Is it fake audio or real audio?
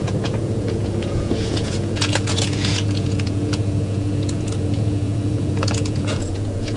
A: fake